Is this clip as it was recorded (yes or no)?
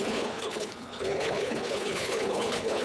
no